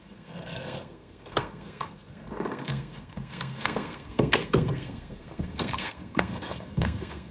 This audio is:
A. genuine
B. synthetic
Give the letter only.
B